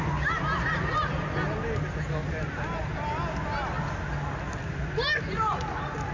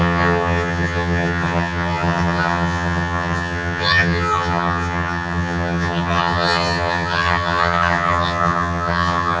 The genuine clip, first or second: first